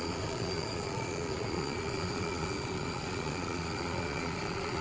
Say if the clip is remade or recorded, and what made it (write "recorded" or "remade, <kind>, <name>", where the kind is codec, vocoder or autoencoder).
remade, vocoder, Vocos